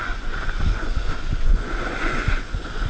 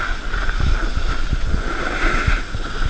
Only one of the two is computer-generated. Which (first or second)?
first